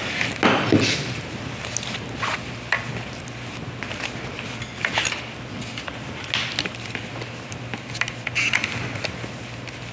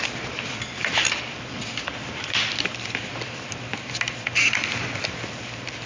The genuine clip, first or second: first